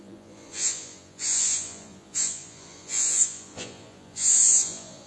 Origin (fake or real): fake